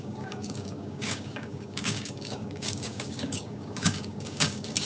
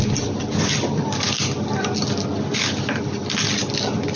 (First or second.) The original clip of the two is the second